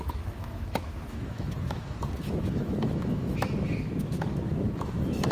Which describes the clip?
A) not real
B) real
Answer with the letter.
A